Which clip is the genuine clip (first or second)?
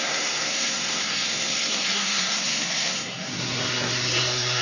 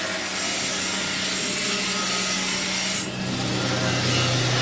second